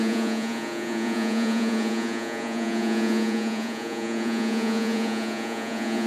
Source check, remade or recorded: remade